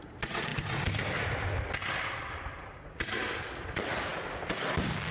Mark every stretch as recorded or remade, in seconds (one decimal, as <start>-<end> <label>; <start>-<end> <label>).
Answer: 0.0-5.1 recorded

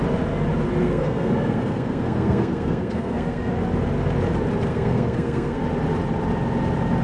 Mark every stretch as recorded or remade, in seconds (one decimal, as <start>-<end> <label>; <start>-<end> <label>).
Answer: 0.0-0.8 recorded; 0.8-3.5 remade; 3.5-4.7 recorded; 4.7-5.6 remade; 5.6-7.0 recorded

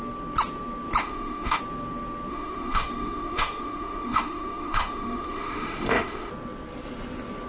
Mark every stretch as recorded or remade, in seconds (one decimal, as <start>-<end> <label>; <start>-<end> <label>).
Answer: 0.0-1.0 recorded; 1.0-1.6 remade; 1.6-2.3 recorded; 2.3-6.3 remade; 6.3-7.5 recorded